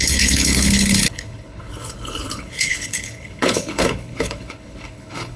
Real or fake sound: fake